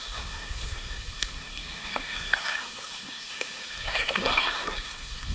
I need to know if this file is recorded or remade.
remade